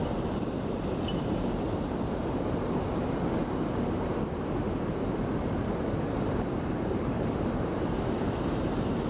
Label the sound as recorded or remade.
remade